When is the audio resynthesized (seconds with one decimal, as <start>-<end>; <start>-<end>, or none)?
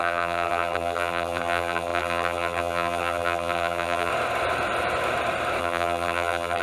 0.0-4.1; 5.6-6.6